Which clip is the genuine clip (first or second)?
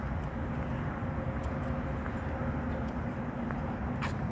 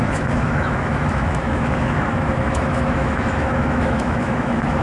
first